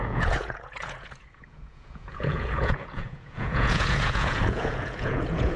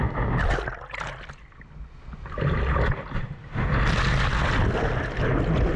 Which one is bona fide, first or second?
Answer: second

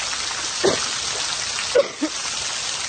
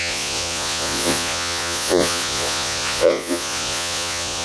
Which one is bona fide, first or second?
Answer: first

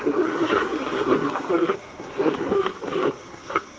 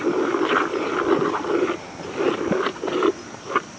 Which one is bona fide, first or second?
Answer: second